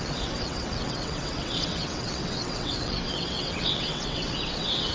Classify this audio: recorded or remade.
remade